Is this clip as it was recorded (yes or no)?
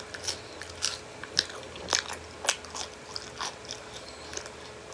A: yes